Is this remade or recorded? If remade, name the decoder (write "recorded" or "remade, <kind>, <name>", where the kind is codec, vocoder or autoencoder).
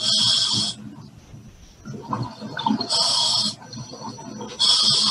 recorded